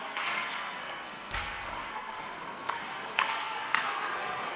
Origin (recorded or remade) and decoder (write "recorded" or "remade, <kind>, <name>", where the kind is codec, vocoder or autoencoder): remade, codec, SNAC